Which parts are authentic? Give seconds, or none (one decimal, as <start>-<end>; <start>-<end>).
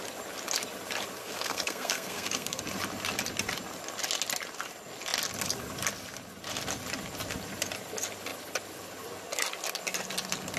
0.0-1.2; 2.6-10.6